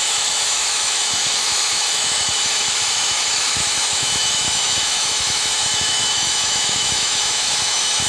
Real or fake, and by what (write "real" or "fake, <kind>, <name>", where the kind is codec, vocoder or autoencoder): fake, autoencoder, DAC-VAE